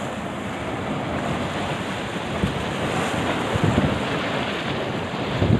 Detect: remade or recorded recorded